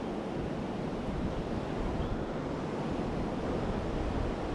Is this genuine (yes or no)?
yes